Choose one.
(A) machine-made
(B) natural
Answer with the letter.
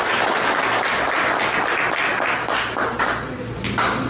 B